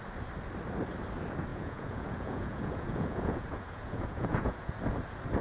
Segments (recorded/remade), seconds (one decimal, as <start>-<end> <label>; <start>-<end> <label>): 0.0-1.5 recorded; 1.5-4.7 remade; 4.7-5.4 recorded